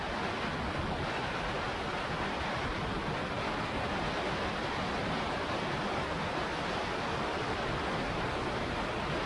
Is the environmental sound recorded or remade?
recorded